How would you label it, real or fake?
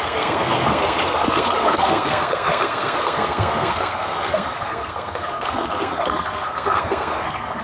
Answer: fake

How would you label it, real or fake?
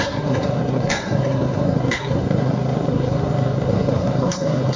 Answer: fake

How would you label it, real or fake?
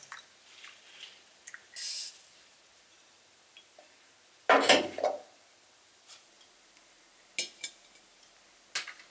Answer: real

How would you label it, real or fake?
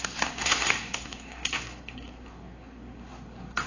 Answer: fake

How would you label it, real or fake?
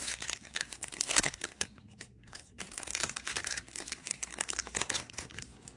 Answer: fake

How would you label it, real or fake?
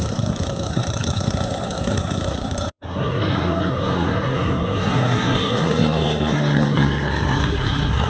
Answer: fake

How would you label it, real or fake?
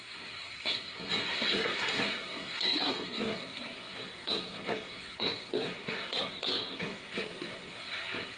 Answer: fake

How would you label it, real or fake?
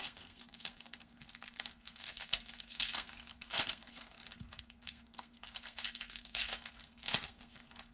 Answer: fake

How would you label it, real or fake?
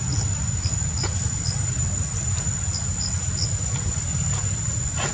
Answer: real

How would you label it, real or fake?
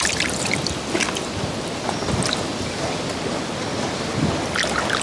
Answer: real